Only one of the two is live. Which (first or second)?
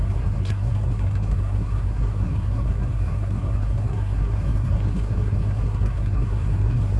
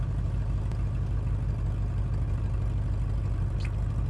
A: second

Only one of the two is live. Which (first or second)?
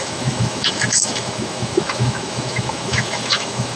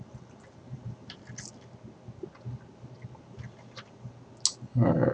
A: second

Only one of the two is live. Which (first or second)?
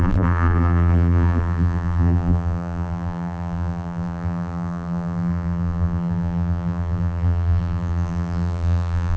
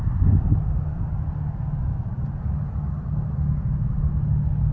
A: second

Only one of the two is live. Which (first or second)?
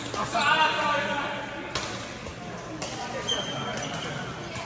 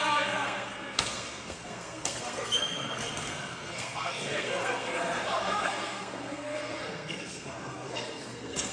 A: first